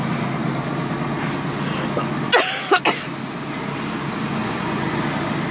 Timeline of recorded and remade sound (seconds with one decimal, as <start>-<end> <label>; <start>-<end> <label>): 0.0-4.4 recorded; 4.4-5.0 remade; 5.0-5.5 recorded